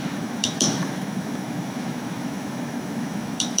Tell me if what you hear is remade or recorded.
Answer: remade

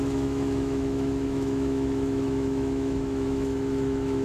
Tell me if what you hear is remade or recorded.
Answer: remade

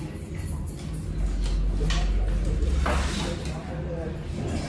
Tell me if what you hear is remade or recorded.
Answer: recorded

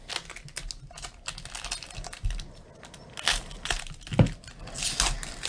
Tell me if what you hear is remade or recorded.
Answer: recorded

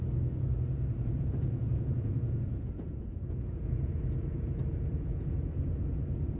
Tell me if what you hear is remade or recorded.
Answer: remade